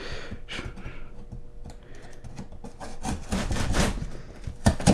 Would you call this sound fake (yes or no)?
no